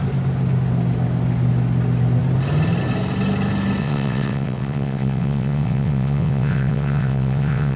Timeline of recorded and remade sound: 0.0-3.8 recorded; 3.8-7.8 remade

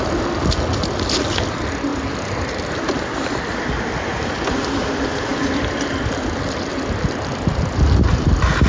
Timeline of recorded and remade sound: 0.0-8.7 recorded

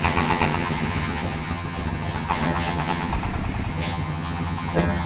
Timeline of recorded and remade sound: 0.0-3.1 remade; 3.1-3.7 recorded; 3.7-5.1 remade

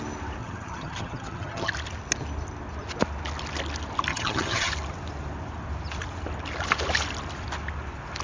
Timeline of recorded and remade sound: 0.0-0.4 recorded; 0.4-1.7 remade; 1.7-4.1 recorded; 4.1-4.7 remade; 4.7-8.2 recorded

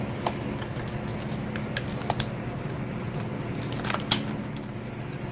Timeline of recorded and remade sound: 0.0-5.3 recorded

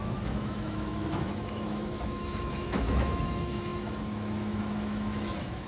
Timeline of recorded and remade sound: 0.0-5.7 remade

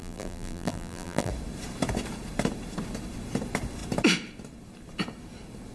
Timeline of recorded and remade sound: 0.0-1.3 remade; 1.3-5.7 recorded

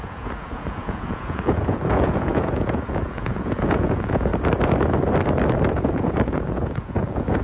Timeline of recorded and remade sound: 0.0-4.3 remade; 4.3-5.7 recorded; 5.7-7.4 remade